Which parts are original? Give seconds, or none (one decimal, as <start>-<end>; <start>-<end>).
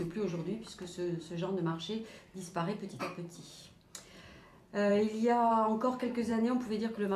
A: 0.0-7.2